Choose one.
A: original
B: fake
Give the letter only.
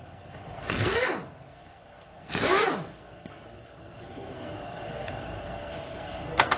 B